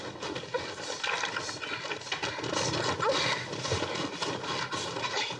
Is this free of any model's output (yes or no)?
yes